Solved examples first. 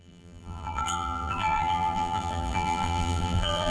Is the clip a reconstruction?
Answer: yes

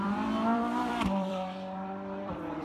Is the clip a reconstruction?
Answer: yes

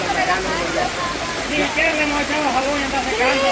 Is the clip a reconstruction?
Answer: yes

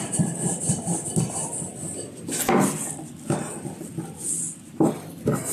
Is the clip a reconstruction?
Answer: no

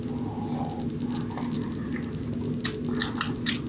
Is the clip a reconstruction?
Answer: no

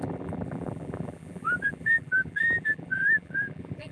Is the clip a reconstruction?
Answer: yes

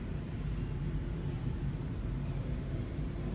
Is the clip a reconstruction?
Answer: yes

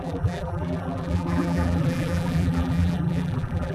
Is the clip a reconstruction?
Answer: yes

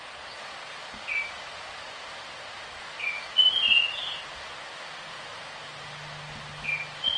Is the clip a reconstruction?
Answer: no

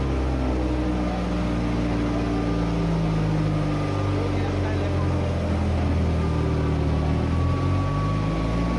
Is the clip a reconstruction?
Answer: no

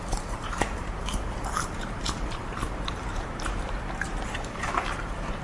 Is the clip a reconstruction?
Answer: yes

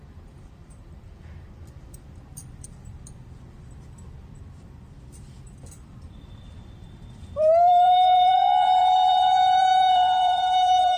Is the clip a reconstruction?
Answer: yes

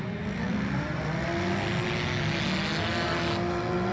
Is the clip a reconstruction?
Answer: no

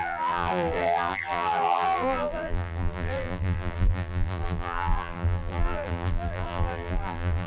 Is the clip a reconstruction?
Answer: yes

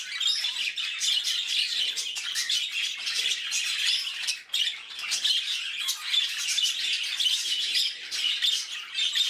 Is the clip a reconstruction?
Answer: no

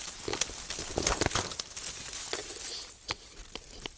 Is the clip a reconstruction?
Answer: no